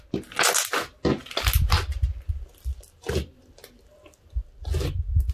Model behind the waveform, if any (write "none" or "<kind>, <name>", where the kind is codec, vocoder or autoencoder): none